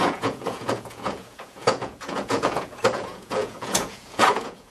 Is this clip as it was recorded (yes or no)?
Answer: no